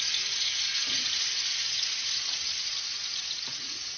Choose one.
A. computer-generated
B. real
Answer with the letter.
A